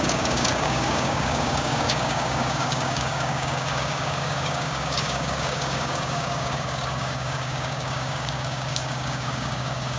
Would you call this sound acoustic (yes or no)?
no